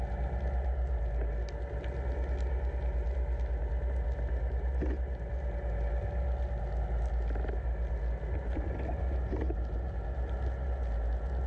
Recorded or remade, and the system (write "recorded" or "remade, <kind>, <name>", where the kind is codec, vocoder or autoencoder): recorded